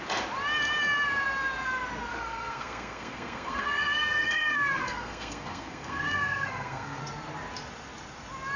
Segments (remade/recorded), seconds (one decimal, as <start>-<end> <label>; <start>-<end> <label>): 0.0-2.1 recorded; 2.1-7.0 remade; 7.0-8.6 recorded